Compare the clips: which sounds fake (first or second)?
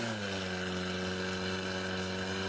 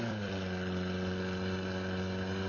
second